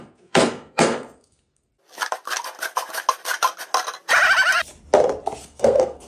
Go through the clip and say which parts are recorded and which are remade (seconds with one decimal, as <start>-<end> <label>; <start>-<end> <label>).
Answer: 0.0-1.7 remade; 1.7-5.4 recorded; 5.4-6.1 remade